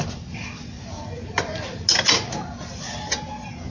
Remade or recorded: recorded